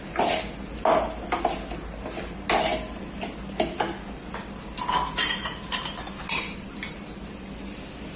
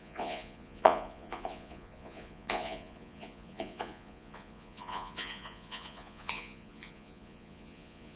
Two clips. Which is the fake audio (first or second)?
second